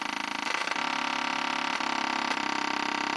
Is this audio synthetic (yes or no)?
no